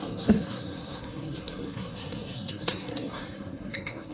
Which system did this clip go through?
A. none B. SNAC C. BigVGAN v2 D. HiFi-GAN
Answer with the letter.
B